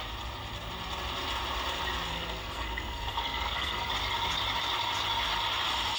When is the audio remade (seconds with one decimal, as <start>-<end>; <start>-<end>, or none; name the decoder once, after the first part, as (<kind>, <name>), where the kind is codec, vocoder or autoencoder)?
2.1-3.9 (codec, SNAC)